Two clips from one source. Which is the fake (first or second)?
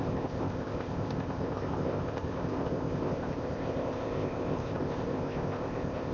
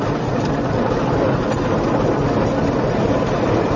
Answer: first